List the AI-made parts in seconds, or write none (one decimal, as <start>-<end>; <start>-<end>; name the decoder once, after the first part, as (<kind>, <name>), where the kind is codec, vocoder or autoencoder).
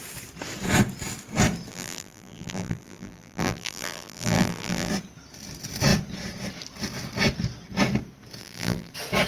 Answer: 1.7-4.9 (vocoder, BigVGAN v2); 8.4-8.9